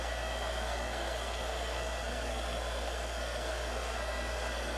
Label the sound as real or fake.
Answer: fake